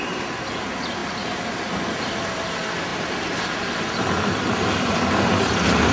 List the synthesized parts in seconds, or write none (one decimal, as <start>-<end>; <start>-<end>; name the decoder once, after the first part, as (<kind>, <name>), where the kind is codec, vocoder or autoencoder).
none

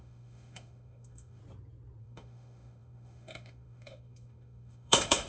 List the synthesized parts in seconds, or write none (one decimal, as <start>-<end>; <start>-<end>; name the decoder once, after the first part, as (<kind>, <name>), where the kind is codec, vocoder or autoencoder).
0.0-1.4 (autoencoder, DAC-VAE); 2.0-5.3

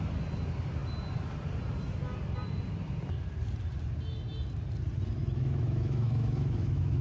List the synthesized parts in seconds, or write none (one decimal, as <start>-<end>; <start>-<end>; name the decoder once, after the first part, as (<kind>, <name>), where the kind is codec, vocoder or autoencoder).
5.2-7.0 (autoencoder, DAC-VAE)

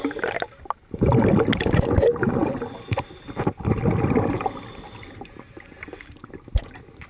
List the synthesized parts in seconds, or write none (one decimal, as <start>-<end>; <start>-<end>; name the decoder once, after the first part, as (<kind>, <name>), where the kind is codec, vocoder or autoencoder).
none